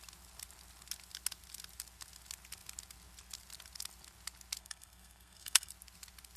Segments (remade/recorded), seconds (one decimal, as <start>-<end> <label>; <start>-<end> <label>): 0.0-4.6 recorded; 4.6-5.7 remade; 5.7-6.4 recorded